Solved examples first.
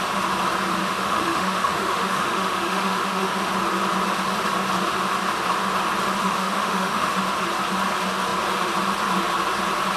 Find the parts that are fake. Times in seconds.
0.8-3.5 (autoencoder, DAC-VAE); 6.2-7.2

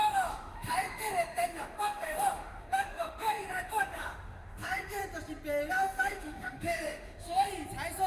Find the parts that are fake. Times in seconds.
0.0-5.0 (autoencoder, DAC-VAE); 5.7-7.5

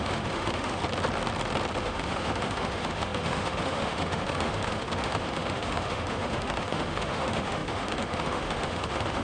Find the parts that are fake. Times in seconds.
0.0-0.8 (autoencoder, DAC-VAE); 1.8-9.2